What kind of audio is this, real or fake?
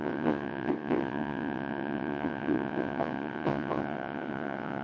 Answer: fake